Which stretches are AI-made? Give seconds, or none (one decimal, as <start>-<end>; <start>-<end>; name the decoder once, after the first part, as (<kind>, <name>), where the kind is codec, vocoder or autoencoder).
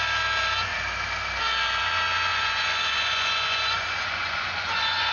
2.3-5.1 (vocoder, Vocos)